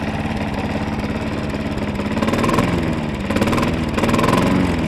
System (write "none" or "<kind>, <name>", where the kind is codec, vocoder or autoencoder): none